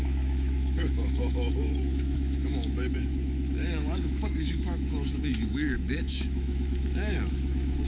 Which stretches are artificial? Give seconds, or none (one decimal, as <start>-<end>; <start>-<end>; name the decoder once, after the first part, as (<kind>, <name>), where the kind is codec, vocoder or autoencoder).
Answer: 0.0-7.9 (autoencoder, DAC-VAE)